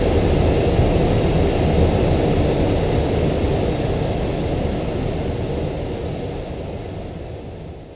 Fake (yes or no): no